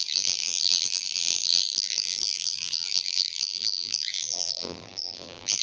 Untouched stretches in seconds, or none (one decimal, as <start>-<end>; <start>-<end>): none